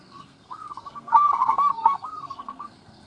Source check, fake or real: fake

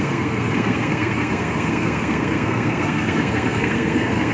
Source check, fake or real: fake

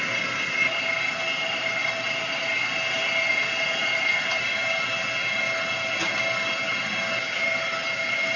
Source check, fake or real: real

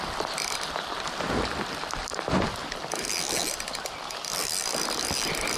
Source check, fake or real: real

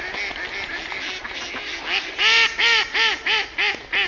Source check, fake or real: real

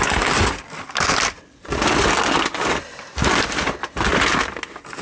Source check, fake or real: real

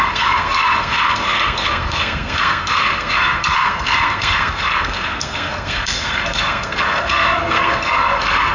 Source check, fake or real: fake